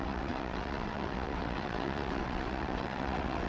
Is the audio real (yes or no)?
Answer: no